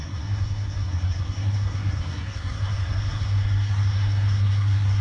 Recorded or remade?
remade